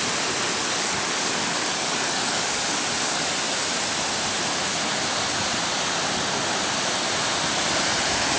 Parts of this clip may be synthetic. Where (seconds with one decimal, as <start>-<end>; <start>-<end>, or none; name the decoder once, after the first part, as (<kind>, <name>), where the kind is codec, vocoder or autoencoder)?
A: 0.6-3.3 (codec, DAC)